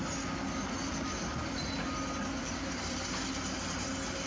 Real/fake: real